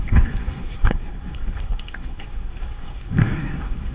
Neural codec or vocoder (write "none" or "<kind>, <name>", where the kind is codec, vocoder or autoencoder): codec, SNAC